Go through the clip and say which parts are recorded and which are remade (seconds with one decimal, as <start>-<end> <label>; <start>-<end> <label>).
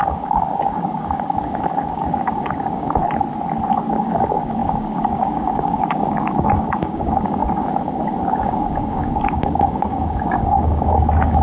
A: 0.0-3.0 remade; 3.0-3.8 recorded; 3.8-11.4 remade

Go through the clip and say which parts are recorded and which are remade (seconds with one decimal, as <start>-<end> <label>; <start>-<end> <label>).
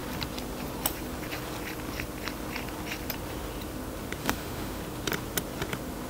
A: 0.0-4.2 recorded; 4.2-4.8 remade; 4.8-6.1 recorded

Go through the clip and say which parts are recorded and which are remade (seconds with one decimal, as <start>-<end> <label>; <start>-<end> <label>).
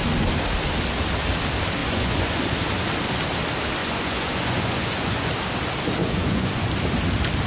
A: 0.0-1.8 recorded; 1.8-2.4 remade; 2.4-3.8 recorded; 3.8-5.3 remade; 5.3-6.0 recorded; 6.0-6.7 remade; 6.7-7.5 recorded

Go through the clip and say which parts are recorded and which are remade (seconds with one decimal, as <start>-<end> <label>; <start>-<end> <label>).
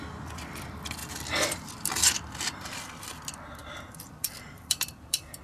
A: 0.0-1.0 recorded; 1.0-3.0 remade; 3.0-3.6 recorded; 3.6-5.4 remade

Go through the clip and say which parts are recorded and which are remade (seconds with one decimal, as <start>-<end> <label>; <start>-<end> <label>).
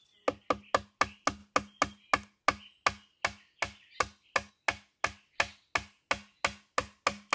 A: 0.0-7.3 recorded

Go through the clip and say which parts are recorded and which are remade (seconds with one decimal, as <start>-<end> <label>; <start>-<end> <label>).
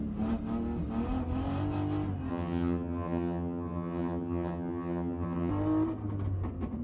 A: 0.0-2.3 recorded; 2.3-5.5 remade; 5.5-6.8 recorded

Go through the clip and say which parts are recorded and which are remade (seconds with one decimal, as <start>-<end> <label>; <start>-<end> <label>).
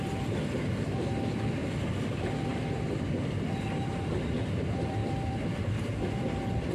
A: 0.0-1.6 remade; 1.6-3.6 recorded; 3.6-6.7 remade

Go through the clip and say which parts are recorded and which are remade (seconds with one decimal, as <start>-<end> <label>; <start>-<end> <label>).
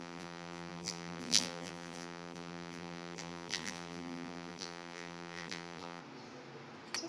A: 0.0-6.0 remade; 6.0-7.1 recorded